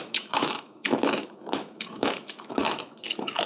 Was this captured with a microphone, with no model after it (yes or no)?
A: no